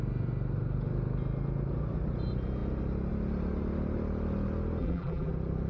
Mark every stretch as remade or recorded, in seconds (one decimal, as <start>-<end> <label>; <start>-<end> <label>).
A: 0.0-4.8 recorded; 4.8-5.3 remade; 5.3-5.7 recorded